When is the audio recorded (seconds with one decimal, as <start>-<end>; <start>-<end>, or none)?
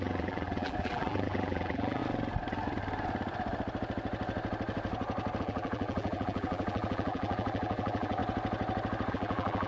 2.0-5.4; 8.2-9.1